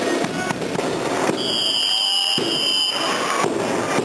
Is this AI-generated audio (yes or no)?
no